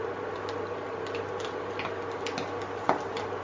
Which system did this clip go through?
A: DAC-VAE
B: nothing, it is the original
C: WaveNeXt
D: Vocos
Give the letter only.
B